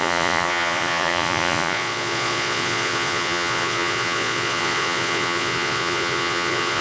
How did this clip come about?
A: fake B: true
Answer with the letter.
A